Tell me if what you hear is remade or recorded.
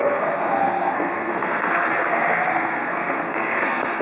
remade